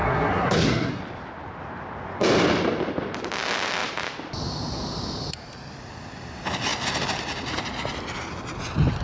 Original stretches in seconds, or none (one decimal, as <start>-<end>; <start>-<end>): 1.0-9.0